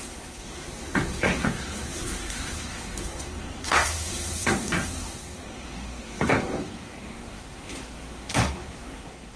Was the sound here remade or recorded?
remade